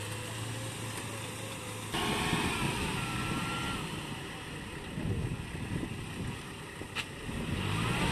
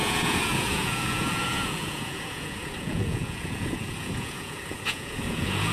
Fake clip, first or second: second